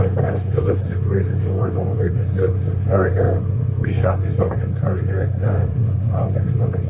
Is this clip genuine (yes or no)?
no